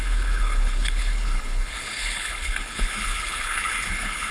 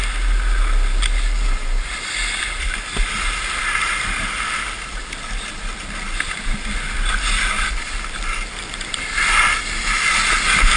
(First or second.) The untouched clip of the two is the second